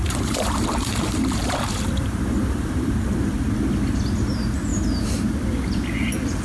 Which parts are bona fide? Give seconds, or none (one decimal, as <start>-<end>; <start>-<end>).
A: 3.0-4.7; 5.4-6.4